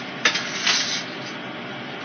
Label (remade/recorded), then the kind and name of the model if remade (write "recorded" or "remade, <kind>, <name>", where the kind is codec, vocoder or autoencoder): recorded